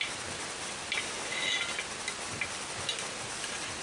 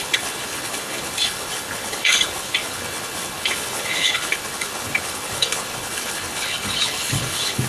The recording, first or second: first